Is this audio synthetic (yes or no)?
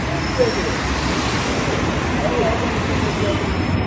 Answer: no